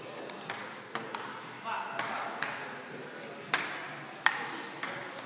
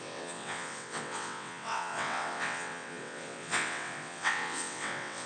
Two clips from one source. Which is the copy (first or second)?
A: second